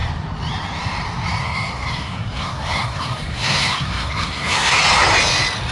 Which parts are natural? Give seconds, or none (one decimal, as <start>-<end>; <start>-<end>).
0.0-1.4; 4.8-5.7